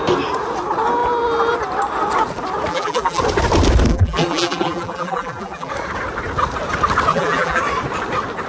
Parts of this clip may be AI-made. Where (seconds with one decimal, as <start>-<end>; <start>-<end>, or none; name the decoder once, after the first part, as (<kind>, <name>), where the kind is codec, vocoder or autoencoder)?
2.7-3.2 (vocoder, BigVGAN v2); 3.9-5.7; 7.1-7.6